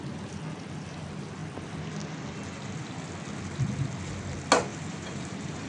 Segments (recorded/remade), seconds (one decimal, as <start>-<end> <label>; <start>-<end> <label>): 0.0-4.7 recorded; 4.7-5.7 remade